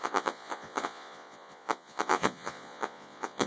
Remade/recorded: remade